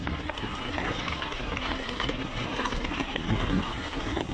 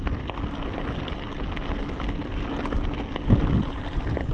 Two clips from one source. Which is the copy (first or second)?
first